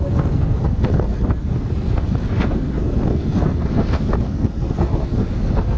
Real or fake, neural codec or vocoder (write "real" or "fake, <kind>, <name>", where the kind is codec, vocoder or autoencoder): fake, codec, SNAC